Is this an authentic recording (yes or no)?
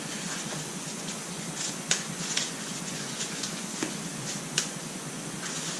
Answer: no